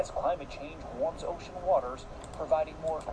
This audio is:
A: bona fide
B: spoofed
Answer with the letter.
A